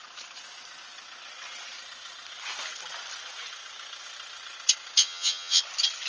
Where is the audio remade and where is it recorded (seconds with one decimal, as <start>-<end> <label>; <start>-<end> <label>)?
0.0-5.0 recorded; 5.0-5.6 remade; 5.6-6.1 recorded